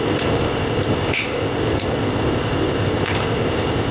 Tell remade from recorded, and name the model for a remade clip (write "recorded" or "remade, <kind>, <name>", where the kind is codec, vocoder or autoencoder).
remade, codec, ZipCodec